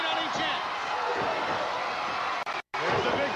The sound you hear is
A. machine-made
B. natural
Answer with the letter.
B